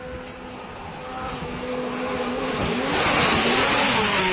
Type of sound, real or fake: real